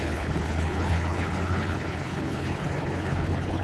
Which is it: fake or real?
fake